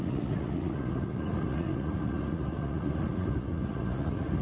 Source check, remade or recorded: remade